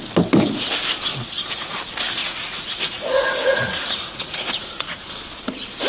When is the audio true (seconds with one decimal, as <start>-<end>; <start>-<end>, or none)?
0.0-1.1; 1.8-2.2; 5.1-5.9

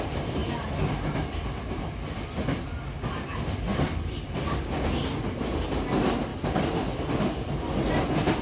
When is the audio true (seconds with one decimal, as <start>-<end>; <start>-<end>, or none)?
0.0-3.7; 4.5-6.3; 7.9-8.4

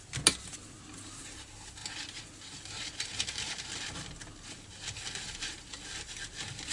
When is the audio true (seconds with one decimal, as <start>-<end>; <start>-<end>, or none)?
0.0-6.7

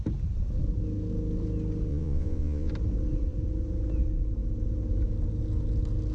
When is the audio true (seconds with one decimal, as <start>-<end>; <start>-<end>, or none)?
0.0-1.9; 2.7-6.1

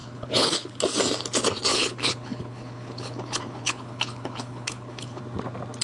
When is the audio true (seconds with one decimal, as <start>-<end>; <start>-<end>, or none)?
0.8-1.7; 5.2-5.8

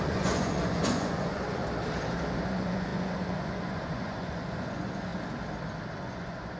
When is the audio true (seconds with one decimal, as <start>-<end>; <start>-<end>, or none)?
1.6-2.4; 5.1-6.0

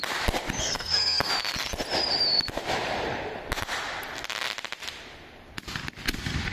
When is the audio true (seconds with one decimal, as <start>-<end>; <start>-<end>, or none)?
0.0-0.6; 1.3-6.5

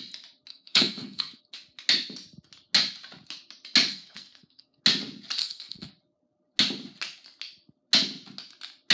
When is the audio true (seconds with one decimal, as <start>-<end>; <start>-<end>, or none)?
0.0-0.5; 1.4-3.9; 4.8-5.4; 5.9-8.9